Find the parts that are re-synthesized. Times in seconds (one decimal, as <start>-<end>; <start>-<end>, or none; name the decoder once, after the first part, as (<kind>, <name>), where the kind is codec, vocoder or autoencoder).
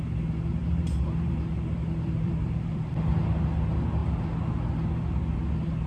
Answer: 0.6-2.9 (vocoder, BigVGAN v2)